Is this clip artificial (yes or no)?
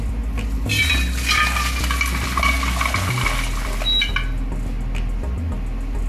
no